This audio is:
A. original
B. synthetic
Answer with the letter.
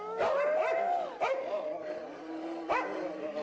A